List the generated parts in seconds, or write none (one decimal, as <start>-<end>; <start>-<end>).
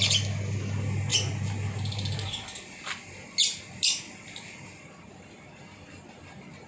none